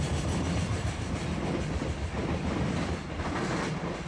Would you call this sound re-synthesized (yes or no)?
no